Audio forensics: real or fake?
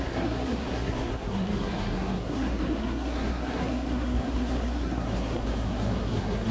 fake